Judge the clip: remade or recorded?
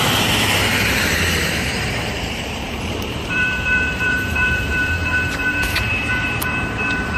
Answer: remade